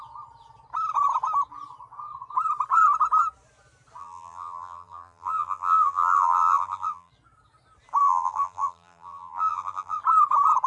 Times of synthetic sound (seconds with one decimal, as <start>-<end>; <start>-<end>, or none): 4.0-7.1; 8.0-10.0